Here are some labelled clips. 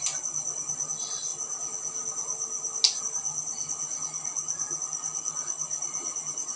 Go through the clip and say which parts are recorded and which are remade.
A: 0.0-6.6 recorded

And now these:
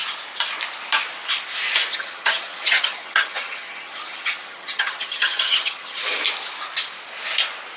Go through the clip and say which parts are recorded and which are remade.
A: 0.0-1.9 recorded; 1.9-6.0 remade; 6.0-7.8 recorded

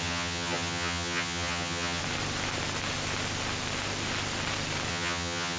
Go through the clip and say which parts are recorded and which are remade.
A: 0.0-2.0 remade; 2.0-4.9 recorded; 4.9-5.6 remade

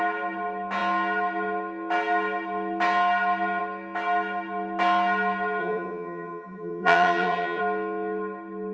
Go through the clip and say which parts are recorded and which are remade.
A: 0.0-5.6 recorded; 5.6-7.6 remade; 7.6-8.7 recorded